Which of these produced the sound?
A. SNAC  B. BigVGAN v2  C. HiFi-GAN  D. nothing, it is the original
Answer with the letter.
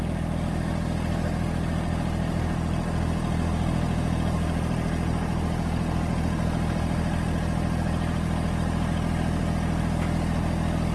D